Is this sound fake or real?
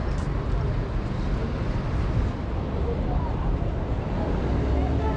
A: real